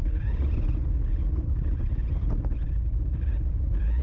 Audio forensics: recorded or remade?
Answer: recorded